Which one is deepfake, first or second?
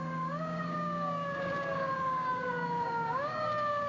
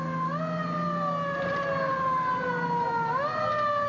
first